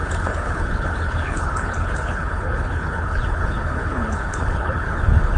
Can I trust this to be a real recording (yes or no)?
no